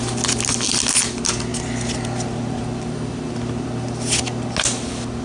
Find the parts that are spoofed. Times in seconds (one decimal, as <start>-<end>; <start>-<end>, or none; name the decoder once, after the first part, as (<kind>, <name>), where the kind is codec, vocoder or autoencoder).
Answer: none